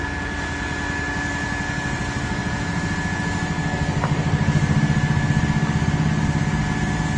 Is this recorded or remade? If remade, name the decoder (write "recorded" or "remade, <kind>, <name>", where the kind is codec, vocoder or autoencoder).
recorded